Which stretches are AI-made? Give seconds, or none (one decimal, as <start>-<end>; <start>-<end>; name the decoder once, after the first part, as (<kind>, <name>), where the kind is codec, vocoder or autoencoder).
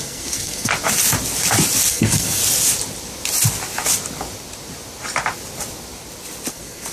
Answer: 0.0-0.7 (codec, SNAC); 1.9-2.4; 6.5-6.9